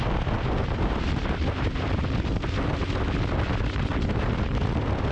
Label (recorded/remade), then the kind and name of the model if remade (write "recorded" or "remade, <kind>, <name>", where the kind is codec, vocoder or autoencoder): recorded